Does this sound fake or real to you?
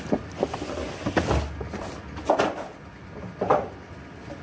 real